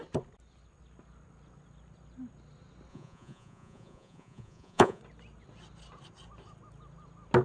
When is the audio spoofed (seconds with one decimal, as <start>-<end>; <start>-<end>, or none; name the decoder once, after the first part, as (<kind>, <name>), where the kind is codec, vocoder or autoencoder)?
2.9-5.0 (vocoder, Vocos)

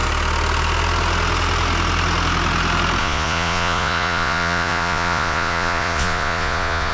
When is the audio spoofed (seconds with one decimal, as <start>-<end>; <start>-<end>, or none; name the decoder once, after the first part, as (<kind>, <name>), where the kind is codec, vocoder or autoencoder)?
3.0-6.9 (vocoder, Vocos)

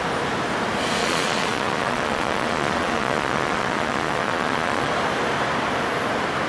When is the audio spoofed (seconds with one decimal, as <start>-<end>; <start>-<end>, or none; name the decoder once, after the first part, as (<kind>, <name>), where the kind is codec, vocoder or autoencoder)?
1.0-4.9 (vocoder, Vocos)

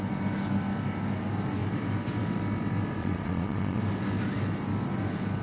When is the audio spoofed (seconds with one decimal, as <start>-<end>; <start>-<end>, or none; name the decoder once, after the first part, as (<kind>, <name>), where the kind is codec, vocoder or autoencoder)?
3.0-3.8 (vocoder, Vocos)